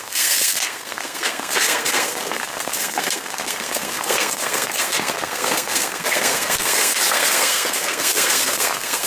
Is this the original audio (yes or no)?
no